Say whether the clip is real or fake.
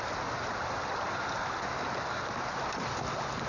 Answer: real